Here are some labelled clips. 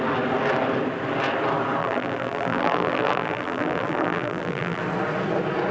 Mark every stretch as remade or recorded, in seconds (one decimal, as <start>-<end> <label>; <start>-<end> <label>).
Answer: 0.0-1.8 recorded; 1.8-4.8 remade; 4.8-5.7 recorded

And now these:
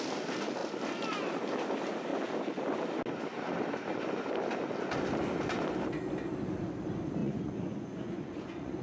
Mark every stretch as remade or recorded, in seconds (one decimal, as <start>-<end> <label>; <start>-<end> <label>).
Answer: 0.0-7.2 recorded; 7.2-8.8 remade

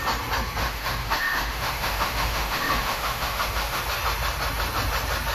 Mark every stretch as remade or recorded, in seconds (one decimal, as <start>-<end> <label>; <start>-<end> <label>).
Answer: 0.0-0.6 recorded; 0.6-3.8 remade; 3.8-5.3 recorded